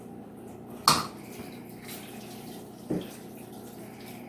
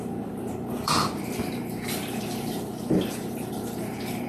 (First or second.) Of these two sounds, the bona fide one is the first